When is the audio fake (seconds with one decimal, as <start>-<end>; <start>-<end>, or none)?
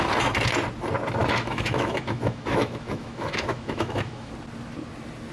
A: 1.2-4.3